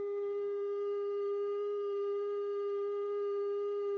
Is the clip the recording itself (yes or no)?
no